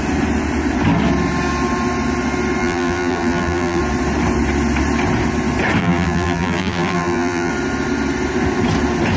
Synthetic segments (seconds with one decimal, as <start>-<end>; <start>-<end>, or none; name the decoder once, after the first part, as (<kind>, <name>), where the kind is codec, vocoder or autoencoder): 2.6-3.8 (vocoder, BigVGAN v2); 5.8-7.5